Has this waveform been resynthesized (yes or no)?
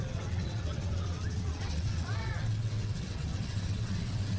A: yes